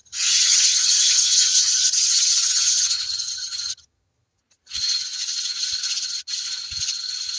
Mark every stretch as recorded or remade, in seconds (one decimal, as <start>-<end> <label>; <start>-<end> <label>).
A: 0.0-4.4 remade; 4.4-7.4 recorded